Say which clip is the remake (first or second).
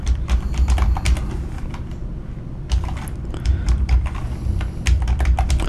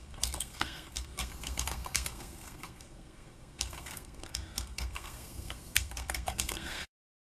second